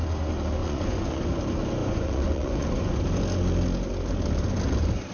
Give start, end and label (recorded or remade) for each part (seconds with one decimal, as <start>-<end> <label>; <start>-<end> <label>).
0.0-0.6 recorded; 0.6-1.2 remade; 1.2-1.8 recorded; 1.8-3.0 remade; 3.0-5.1 recorded